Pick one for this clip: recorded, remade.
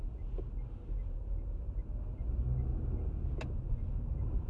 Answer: recorded